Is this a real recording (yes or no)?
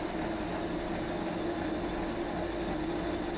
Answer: yes